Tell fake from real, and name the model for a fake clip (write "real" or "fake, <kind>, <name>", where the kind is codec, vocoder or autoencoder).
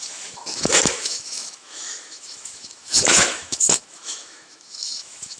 fake, autoencoder, DAC-VAE